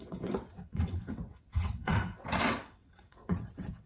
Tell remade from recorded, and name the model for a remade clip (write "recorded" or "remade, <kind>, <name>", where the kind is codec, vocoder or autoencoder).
remade, vocoder, WaveNeXt